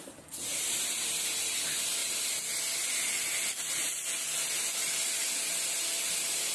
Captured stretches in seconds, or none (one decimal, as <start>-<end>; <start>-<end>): 0.0-6.5